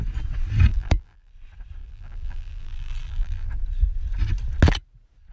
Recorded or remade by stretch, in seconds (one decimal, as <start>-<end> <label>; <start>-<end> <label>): 0.0-0.7 recorded; 0.7-1.3 remade; 1.3-1.8 recorded; 1.8-3.5 remade; 3.5-5.3 recorded